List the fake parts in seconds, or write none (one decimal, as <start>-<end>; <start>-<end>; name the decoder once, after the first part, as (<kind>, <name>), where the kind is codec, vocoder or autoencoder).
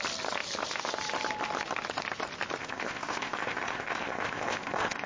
2.6-5.1 (codec, ZipCodec)